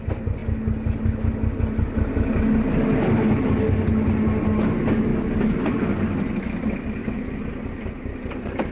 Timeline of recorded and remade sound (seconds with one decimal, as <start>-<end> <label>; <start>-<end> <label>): 0.0-7.0 recorded; 7.0-7.5 remade; 7.5-8.7 recorded

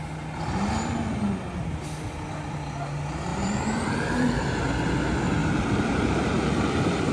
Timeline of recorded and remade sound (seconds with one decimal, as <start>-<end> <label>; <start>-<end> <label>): 0.0-3.3 recorded; 3.3-4.5 remade; 4.5-5.4 recorded; 5.4-7.1 remade